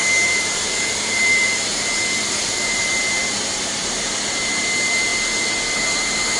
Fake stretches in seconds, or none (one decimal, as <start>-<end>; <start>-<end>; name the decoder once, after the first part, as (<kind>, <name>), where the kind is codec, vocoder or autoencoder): 0.0-6.4 (vocoder, BigVGAN v2)